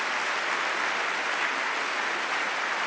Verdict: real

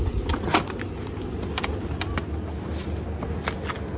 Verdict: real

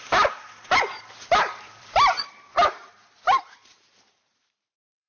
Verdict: fake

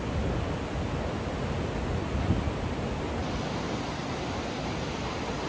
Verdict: real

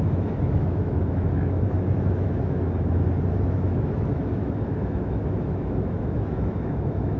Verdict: fake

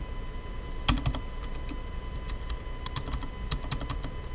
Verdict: real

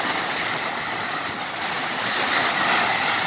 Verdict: real